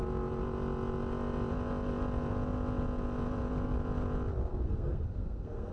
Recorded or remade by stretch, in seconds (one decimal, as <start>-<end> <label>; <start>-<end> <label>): 0.0-4.5 recorded; 4.5-5.7 remade